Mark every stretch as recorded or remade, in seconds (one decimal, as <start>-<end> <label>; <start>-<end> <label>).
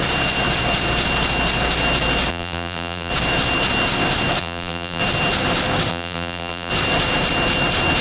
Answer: 0.0-2.3 recorded; 2.3-3.1 remade; 3.1-4.4 recorded; 4.4-5.0 remade; 5.0-5.9 recorded; 5.9-6.7 remade; 6.7-8.0 recorded